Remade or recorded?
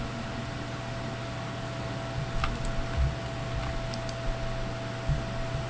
recorded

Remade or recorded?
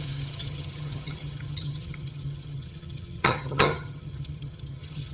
remade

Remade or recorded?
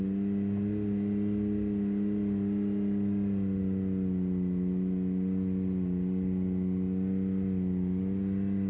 recorded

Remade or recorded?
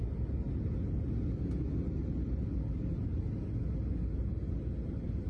recorded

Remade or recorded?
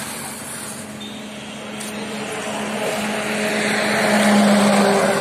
recorded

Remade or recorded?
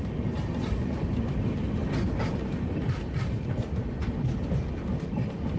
recorded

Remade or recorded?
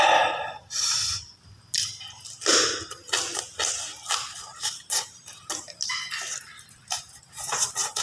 recorded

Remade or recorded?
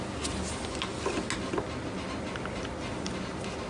recorded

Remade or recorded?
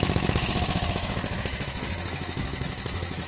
remade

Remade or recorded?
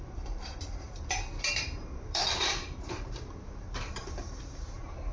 remade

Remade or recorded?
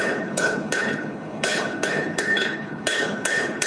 remade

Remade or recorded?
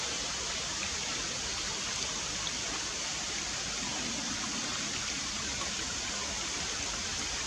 recorded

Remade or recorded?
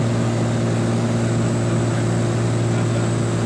recorded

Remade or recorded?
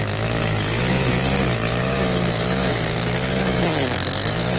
remade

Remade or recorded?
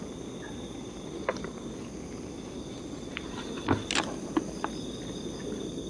recorded